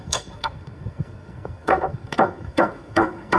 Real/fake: fake